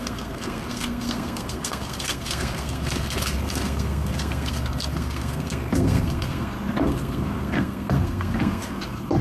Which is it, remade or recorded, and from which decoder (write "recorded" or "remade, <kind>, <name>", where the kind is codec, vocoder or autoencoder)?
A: remade, codec, SNAC